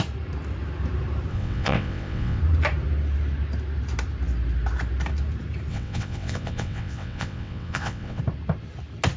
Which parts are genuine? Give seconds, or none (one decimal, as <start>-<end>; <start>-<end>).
0.0-1.3; 2.4-5.7; 8.2-9.2